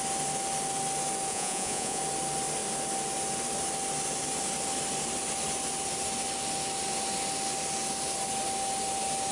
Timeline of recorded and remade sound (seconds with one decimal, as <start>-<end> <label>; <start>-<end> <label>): 0.0-1.3 recorded; 1.3-2.0 remade; 2.0-9.3 recorded